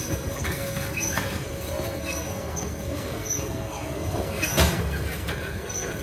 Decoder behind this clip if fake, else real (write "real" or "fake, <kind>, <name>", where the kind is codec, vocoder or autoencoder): fake, codec, SNAC